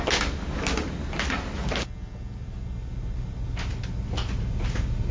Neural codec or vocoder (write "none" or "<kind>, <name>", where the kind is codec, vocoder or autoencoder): none